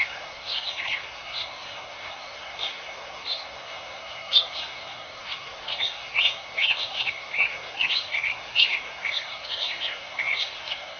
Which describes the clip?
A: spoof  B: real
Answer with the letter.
A